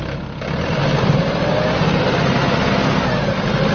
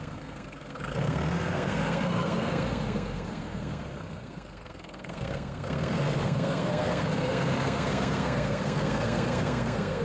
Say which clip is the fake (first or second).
second